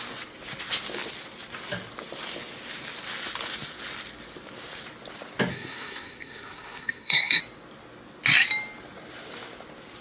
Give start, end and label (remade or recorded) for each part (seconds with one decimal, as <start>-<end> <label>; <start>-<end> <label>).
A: 0.0-5.5 recorded; 5.5-7.4 remade; 7.4-10.0 recorded